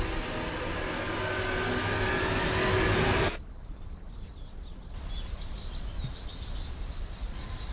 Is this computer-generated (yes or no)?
no